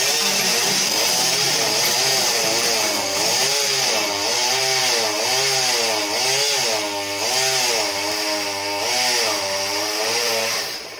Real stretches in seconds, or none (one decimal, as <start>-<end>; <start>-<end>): 4.8-9.3